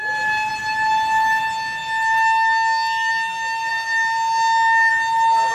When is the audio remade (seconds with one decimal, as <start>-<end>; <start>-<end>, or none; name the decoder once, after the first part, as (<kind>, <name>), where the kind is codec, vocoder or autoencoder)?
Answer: none